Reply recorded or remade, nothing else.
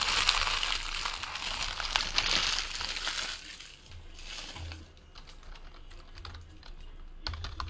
recorded